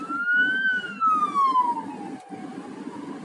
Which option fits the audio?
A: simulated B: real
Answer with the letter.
B